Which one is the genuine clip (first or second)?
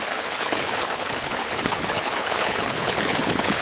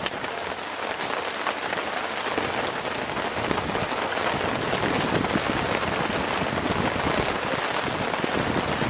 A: second